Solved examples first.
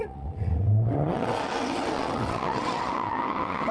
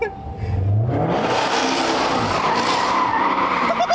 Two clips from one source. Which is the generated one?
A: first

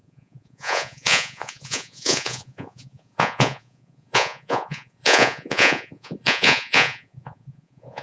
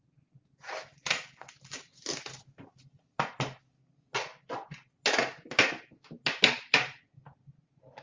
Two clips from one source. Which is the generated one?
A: first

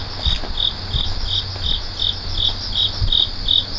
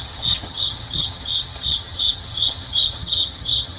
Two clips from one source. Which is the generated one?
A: second